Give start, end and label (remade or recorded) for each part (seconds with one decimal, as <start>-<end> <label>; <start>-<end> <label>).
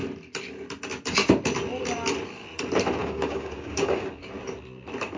0.0-3.0 recorded; 3.0-4.2 remade; 4.2-5.2 recorded